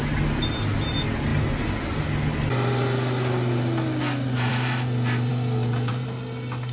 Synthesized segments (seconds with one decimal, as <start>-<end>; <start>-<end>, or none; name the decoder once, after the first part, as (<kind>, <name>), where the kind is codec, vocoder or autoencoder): none